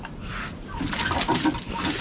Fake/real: real